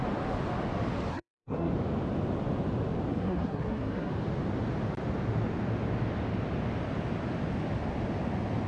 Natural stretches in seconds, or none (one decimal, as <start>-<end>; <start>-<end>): 0.0-1.1; 1.7-3.1; 4.1-8.7